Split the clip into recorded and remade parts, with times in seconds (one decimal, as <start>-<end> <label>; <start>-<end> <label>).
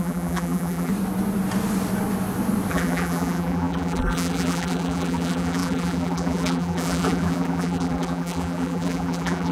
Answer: 0.0-0.9 remade; 0.9-2.7 recorded; 2.7-9.5 remade